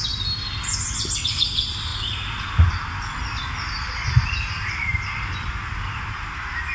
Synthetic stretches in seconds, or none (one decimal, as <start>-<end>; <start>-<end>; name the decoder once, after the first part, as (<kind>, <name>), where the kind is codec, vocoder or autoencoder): none